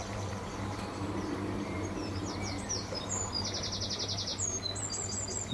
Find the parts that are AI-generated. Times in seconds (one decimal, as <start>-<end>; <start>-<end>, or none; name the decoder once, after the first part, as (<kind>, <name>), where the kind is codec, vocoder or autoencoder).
0.0-3.3 (vocoder, BigVGAN v2)